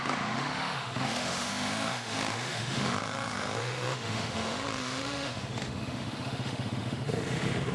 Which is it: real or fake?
fake